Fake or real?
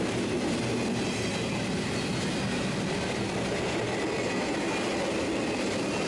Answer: real